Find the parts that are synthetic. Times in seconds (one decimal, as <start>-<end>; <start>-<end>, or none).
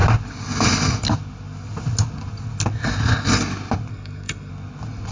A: 3.9-4.5